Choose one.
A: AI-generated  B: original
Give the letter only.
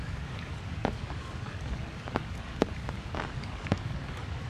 A